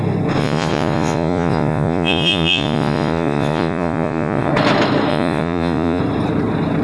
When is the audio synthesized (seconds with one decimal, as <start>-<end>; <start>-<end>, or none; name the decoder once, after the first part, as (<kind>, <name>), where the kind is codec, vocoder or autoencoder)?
0.4-4.5 (vocoder, Vocos); 5.1-6.0